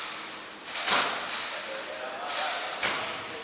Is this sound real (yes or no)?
yes